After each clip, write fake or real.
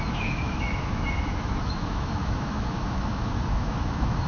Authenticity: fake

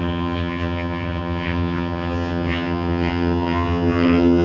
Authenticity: fake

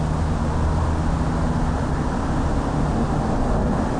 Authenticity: real